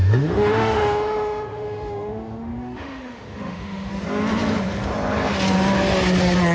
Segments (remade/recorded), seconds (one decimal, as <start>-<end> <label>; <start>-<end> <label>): 0.0-3.9 remade; 3.9-6.5 recorded